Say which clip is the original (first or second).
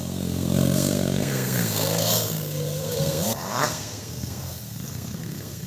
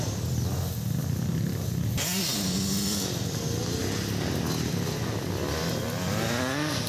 second